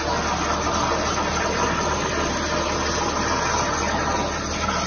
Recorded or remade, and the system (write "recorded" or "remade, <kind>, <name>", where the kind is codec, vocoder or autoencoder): recorded